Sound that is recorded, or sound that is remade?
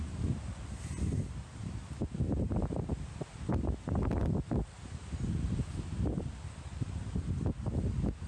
recorded